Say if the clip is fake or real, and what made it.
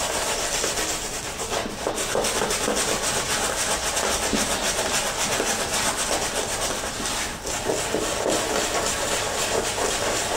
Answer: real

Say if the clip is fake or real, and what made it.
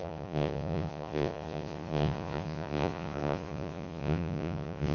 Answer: fake, vocoder, Vocos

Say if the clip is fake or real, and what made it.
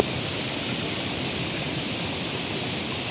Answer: real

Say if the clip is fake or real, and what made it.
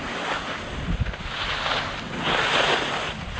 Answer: real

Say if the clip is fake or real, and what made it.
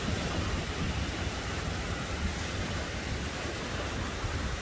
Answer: real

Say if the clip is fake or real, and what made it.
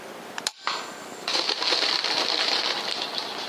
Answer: real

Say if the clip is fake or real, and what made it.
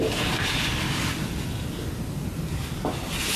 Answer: real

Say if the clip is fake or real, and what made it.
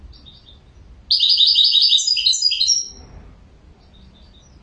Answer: real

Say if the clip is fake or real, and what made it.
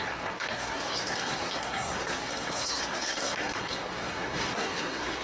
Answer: fake, codec, SNAC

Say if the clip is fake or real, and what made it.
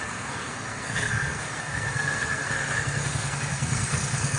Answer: fake, codec, SNAC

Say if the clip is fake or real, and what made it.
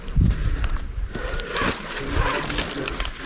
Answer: real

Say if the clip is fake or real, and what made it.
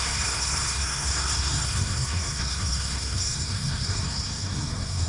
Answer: fake, codec, SNAC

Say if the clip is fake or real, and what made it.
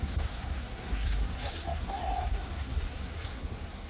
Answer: fake, codec, SNAC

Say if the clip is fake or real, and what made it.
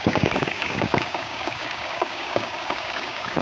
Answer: fake, codec, DAC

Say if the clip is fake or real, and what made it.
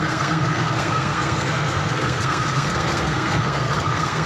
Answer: fake, codec, SNAC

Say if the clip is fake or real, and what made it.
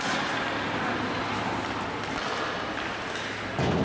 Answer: real